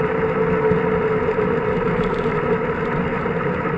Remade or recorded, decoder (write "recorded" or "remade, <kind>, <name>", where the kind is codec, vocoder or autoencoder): recorded